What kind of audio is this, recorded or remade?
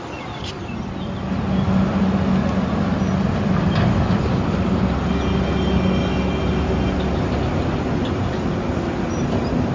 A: recorded